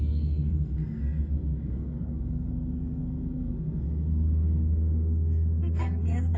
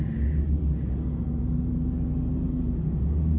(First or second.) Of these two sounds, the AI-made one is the first